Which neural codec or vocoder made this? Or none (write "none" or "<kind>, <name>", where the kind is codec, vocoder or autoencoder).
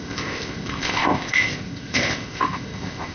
codec, ZipCodec